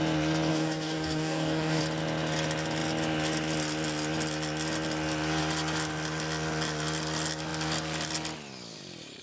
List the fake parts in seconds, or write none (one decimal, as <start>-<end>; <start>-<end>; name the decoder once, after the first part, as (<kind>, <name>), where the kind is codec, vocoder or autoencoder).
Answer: 0.5-1.8 (codec, DAC)